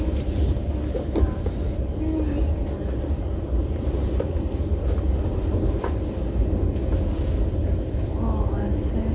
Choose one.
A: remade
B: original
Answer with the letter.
B